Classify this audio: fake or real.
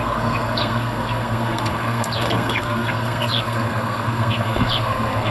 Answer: fake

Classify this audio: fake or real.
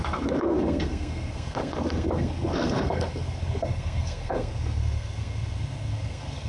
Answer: fake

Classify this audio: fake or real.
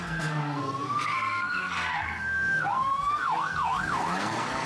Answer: fake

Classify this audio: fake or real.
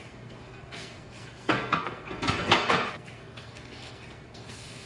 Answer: fake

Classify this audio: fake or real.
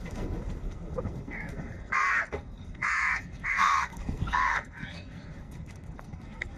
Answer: fake